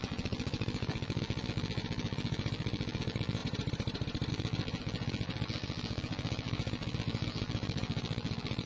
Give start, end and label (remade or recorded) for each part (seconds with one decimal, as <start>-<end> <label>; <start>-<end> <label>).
0.0-3.4 remade; 3.4-4.3 recorded; 4.3-8.7 remade